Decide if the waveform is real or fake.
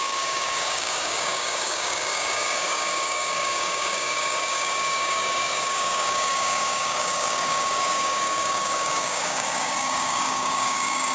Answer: fake